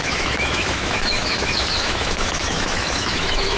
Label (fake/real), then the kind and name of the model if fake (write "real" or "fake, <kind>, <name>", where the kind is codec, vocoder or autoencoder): fake, autoencoder, DAC-VAE